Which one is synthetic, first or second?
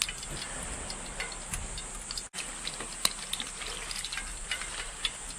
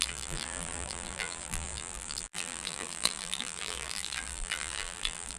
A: second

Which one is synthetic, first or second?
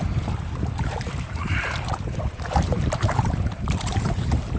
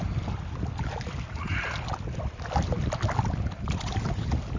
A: first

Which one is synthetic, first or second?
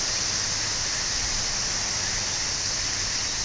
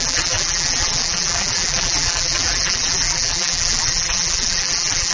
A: second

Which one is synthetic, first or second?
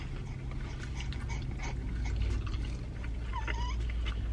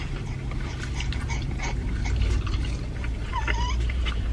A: second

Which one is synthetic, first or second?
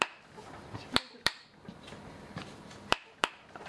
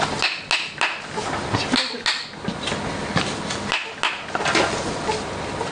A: first